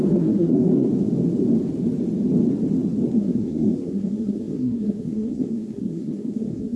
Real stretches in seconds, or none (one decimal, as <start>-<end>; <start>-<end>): 0.9-3.1